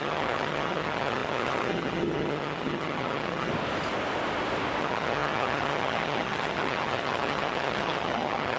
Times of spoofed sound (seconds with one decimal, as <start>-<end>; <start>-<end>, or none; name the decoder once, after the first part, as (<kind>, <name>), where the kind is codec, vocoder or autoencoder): 0.0-3.5 (vocoder, HiFi-GAN); 4.8-8.6